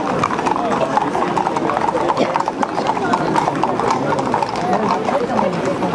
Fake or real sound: real